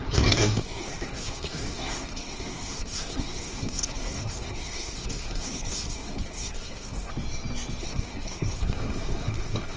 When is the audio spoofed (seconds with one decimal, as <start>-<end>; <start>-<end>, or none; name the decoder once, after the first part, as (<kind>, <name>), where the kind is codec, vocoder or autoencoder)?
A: 0.0-7.1 (codec, SNAC); 7.8-9.8